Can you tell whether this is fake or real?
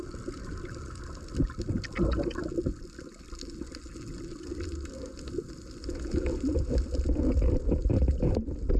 real